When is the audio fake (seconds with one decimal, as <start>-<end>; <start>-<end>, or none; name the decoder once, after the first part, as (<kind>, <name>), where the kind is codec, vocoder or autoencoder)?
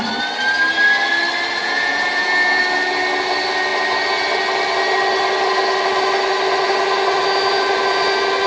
1.6-2.6 (vocoder, Vocos)